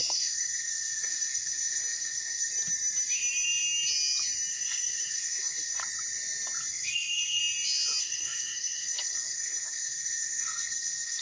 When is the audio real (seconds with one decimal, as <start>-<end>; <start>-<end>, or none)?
2.5-4.5; 5.8-6.7; 7.4-8.0